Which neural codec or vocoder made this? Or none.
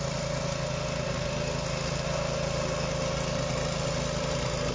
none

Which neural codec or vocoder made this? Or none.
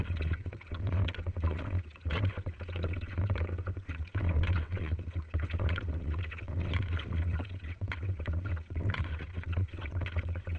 vocoder, WaveNeXt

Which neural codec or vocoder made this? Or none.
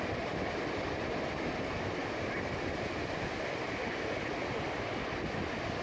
none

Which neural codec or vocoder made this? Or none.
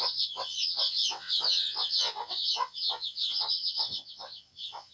vocoder, WaveNeXt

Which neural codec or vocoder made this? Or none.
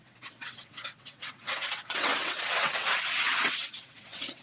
vocoder, WaveNeXt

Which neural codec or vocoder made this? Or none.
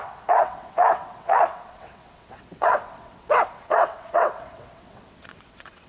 vocoder, WaveNeXt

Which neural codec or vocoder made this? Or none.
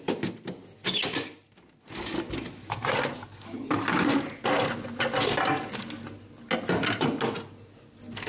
none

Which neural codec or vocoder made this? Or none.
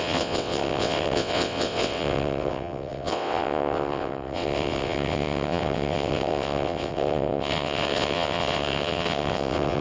vocoder, WaveNeXt